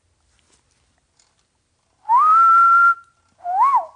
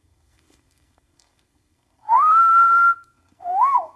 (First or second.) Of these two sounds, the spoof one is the second